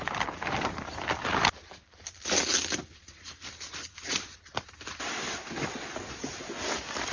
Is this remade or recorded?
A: recorded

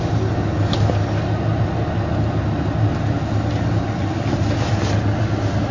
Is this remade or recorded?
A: recorded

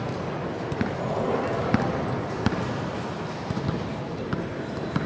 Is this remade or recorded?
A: recorded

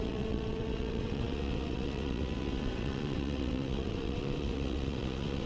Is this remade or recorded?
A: remade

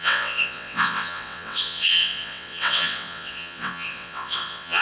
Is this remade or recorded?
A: remade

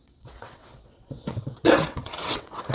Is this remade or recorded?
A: remade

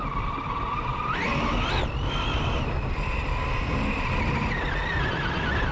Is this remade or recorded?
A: recorded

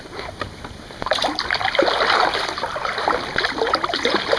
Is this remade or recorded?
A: recorded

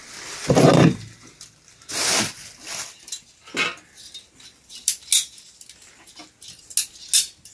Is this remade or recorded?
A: recorded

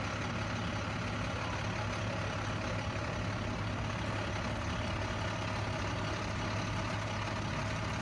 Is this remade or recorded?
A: recorded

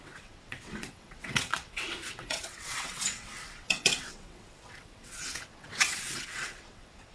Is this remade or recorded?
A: remade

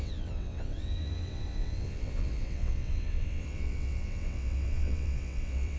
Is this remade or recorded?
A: remade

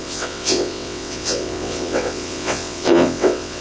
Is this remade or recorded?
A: remade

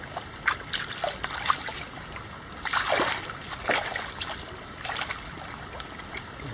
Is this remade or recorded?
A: recorded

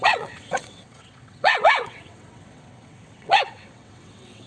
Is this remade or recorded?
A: remade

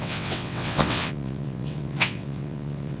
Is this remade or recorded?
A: remade